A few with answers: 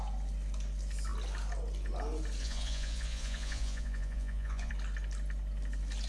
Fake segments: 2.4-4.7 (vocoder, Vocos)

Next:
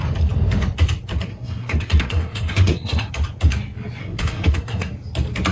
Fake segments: 1.3-3.1 (codec, SNAC); 4.0-4.9

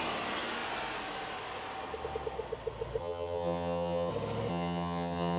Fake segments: 3.0-4.1 (vocoder, HiFi-GAN); 4.5-5.4

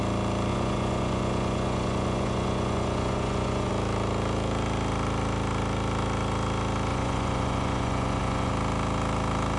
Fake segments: 0.5-3.7 (vocoder, Vocos); 6.9-8.5

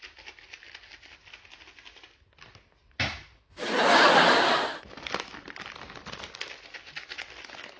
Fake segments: none

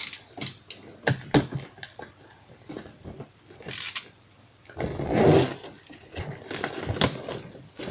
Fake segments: none

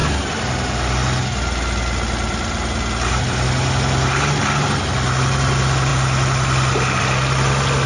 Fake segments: none